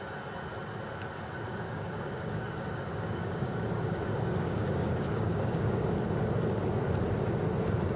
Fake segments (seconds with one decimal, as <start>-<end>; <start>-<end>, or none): 1.5-5.9